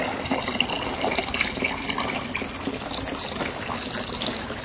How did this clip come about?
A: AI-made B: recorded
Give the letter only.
B